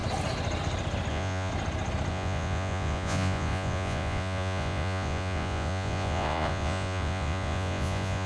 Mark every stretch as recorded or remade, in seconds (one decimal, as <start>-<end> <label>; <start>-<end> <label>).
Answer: 0.0-1.1 recorded; 1.1-1.5 remade; 1.5-2.1 recorded; 2.1-8.3 remade